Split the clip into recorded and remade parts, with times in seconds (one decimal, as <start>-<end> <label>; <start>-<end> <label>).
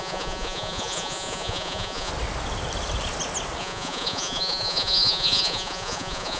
0.0-2.1 remade; 2.1-3.6 recorded; 3.6-6.4 remade